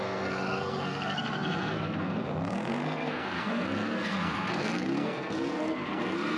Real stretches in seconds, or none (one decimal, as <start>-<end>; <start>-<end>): none

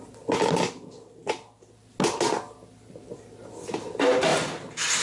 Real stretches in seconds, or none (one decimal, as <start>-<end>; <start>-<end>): 0.0-5.0

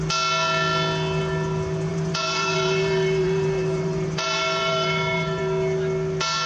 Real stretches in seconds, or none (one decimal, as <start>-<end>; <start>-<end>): 0.0-1.9; 5.4-6.5

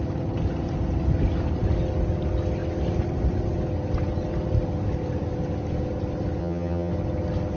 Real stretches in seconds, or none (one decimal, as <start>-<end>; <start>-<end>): 0.0-6.4; 6.9-7.6